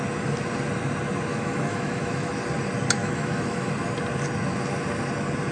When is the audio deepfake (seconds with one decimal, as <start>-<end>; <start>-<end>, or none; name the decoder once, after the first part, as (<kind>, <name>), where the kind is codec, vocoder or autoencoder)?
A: 1.3-2.3 (autoencoder, DAC-VAE); 3.0-3.7